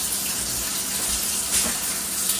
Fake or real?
real